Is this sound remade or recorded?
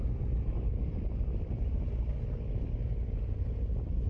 recorded